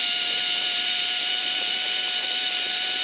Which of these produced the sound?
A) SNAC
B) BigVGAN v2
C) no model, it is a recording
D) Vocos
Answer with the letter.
B